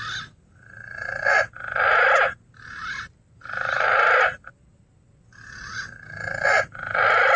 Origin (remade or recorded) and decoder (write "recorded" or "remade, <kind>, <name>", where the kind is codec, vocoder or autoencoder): recorded